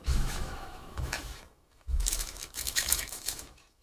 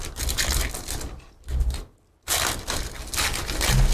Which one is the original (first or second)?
second